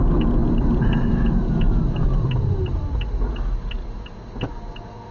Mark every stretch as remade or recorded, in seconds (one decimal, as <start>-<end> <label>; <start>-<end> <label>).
0.0-5.1 recorded